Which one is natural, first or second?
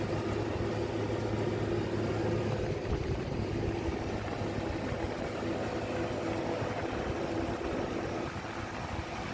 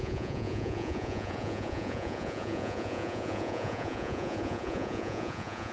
first